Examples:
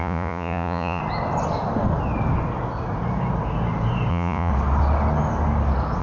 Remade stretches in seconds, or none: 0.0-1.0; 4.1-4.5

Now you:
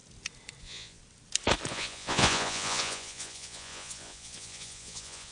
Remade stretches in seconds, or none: 0.6-1.0; 1.7-5.3

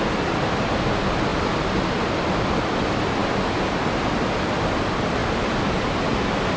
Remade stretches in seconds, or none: none

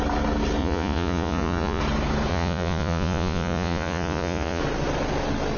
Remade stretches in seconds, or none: 0.6-1.8; 2.3-4.6